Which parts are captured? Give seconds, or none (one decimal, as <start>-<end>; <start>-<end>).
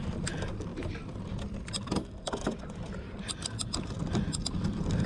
none